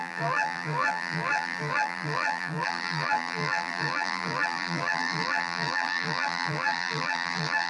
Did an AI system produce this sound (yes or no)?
yes